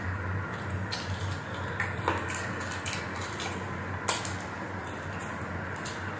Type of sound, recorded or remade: recorded